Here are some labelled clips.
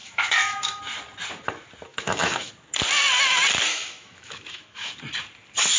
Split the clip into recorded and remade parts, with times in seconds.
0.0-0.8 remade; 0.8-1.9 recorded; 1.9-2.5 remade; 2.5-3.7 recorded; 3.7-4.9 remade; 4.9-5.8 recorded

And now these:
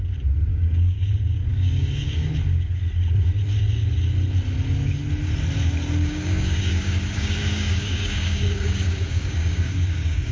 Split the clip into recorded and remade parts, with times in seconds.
0.0-0.5 recorded; 0.5-1.1 remade; 1.1-1.5 recorded; 1.5-2.2 remade; 2.2-6.0 recorded; 6.0-10.3 remade

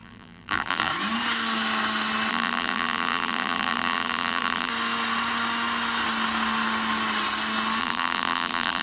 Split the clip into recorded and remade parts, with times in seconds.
0.0-0.9 remade; 0.9-2.3 recorded; 2.3-4.7 remade; 4.7-7.8 recorded; 7.8-8.8 remade

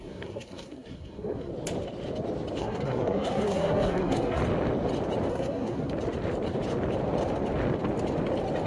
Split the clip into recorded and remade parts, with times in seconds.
0.0-1.5 remade; 1.5-2.6 recorded; 2.6-4.4 remade; 4.4-5.3 recorded; 5.3-5.9 remade; 5.9-8.7 recorded

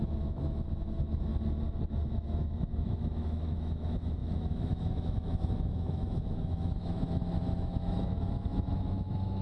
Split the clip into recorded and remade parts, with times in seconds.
0.0-1.3 remade; 1.3-1.9 recorded; 1.9-9.4 remade

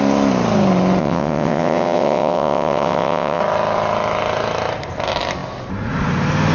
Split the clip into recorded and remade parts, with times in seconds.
0.0-1.0 recorded; 1.0-3.4 remade; 3.4-6.5 recorded